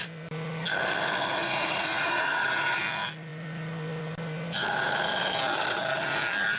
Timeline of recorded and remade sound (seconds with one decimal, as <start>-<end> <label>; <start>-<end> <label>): 0.0-1.4 recorded; 1.4-2.8 remade; 2.8-6.6 recorded